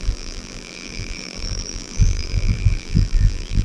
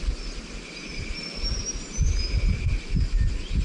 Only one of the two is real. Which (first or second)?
second